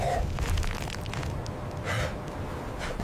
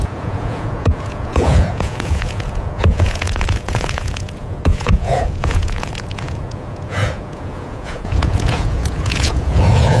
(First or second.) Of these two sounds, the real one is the first